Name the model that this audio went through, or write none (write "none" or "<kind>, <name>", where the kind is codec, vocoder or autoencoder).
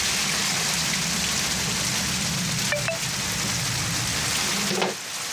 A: none